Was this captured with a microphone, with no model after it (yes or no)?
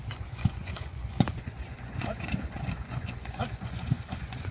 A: no